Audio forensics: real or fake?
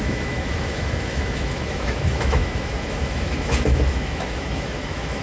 fake